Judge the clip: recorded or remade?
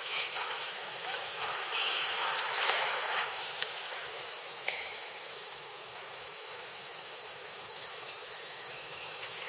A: remade